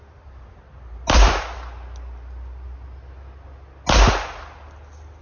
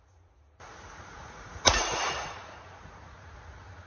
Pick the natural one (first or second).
first